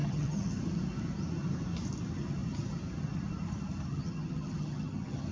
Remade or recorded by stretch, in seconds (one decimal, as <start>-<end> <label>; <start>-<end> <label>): 0.0-0.6 remade; 0.6-3.9 recorded; 3.9-5.3 remade